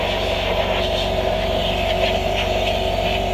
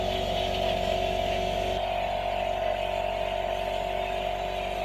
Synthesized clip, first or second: first